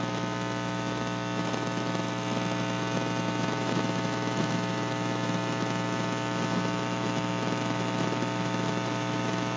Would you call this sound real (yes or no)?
no